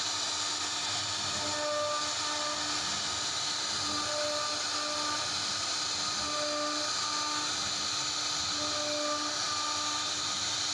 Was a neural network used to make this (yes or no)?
no